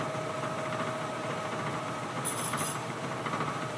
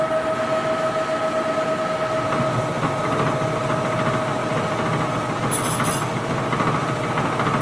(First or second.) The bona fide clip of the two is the second